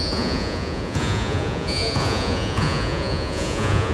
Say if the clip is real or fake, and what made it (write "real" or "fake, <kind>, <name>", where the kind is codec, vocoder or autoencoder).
fake, vocoder, Vocos